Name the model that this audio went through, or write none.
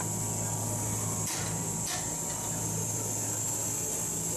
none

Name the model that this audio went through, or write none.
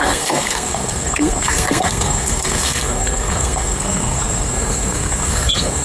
codec, SNAC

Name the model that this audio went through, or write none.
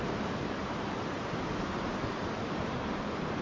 vocoder, BigVGAN v2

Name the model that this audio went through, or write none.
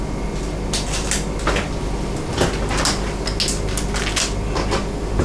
none